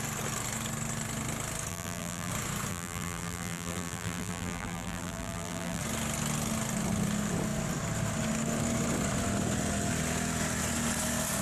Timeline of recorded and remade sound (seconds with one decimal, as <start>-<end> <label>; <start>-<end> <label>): 0.0-1.7 recorded; 1.7-2.3 remade; 2.3-2.7 recorded; 2.7-5.8 remade; 5.8-11.4 recorded